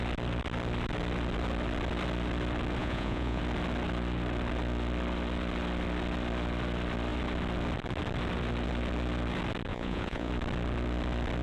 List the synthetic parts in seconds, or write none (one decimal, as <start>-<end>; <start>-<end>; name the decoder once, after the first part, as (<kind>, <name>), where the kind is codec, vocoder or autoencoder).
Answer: 2.8-3.4 (vocoder, Vocos); 9.7-10.3